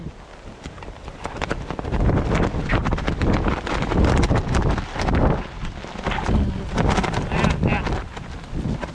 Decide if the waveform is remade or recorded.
recorded